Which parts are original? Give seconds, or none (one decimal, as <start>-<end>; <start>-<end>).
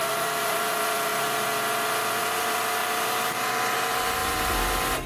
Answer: 0.6-2.8; 3.5-5.1